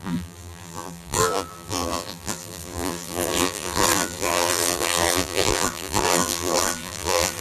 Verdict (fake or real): fake